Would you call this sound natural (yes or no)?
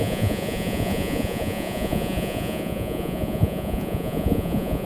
no